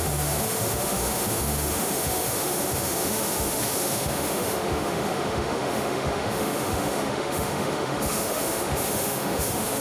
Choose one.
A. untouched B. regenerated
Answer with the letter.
B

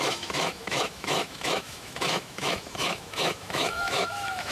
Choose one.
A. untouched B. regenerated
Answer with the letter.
B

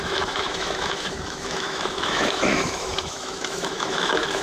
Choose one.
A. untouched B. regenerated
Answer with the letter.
B